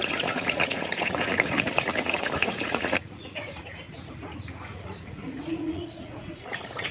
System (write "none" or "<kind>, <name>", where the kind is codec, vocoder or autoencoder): vocoder, Vocos